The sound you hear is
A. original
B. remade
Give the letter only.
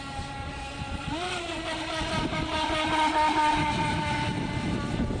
A